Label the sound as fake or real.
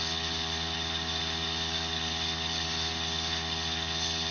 real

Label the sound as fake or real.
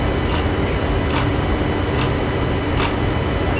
real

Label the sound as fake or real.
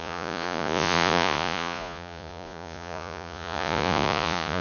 fake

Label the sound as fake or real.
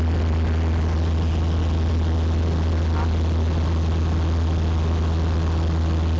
real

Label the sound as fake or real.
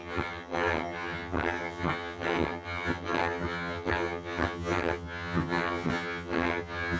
fake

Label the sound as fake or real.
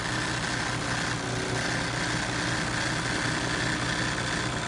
real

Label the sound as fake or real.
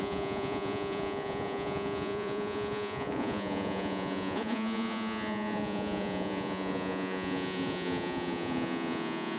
fake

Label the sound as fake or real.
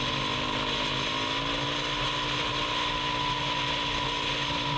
real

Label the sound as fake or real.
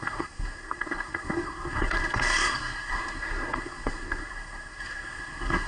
fake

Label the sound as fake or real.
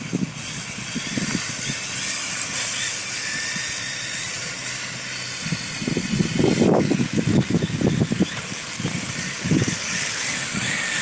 real